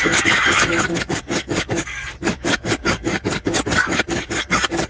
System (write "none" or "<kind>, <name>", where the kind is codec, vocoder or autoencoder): codec, DAC